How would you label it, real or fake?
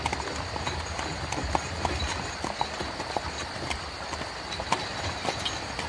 real